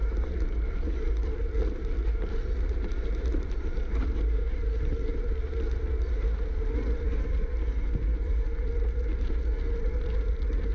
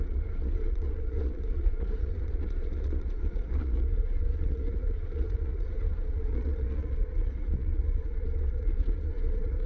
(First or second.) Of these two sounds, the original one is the first